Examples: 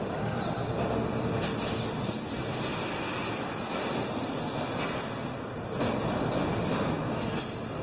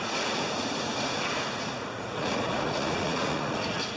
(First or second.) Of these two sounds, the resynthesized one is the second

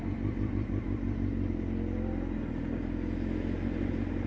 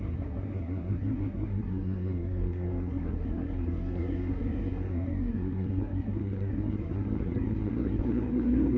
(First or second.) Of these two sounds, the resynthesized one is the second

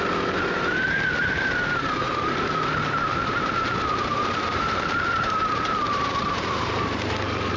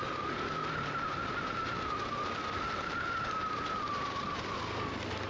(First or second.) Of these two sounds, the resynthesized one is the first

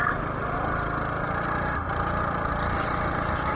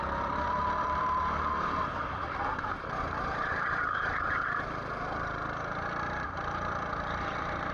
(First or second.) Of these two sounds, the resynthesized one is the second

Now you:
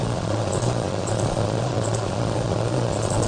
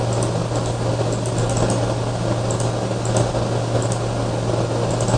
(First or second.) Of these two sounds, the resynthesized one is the first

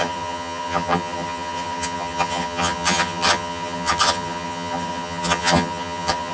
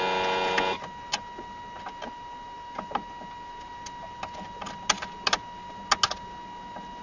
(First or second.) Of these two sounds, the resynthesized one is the first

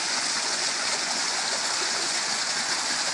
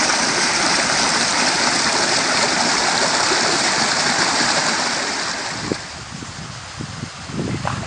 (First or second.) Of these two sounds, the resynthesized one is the first